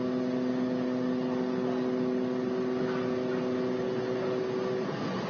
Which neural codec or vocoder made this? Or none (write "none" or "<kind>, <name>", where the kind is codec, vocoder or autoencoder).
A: none